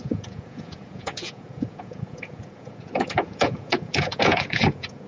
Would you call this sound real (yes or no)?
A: no